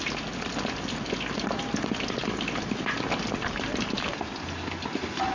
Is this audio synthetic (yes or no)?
no